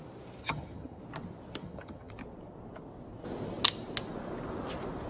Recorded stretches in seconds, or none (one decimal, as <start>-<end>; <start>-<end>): 0.0-0.4; 1.0-1.6; 2.1-5.1